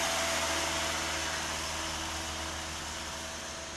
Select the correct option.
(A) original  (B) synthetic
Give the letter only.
A